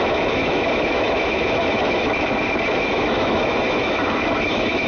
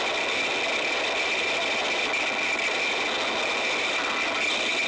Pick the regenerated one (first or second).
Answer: first